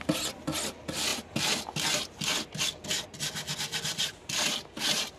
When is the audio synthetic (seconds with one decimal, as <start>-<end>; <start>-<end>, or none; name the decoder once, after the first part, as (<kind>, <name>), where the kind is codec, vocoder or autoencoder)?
none